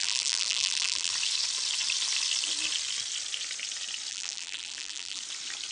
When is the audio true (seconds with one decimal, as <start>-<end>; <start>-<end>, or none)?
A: 1.1-4.1; 5.2-5.7

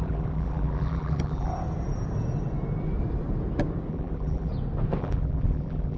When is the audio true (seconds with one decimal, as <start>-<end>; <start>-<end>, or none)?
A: 1.5-3.9; 4.5-5.0

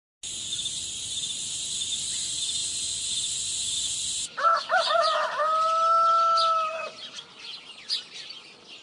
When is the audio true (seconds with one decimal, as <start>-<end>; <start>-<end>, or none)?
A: 0.0-8.8

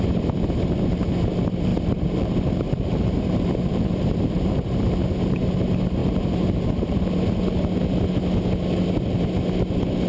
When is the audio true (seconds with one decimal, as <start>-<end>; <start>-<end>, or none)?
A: 0.0-1.7; 4.8-6.0; 7.0-10.1

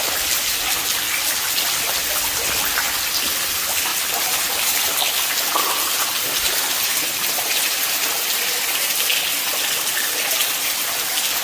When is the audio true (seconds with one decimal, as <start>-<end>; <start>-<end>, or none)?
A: 0.0-11.4